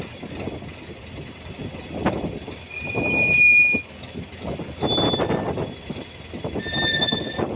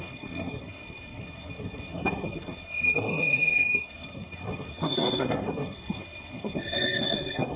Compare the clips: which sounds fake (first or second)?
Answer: second